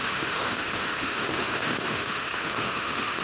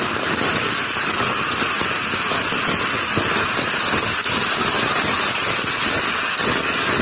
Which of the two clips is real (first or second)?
second